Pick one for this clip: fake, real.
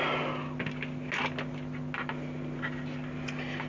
real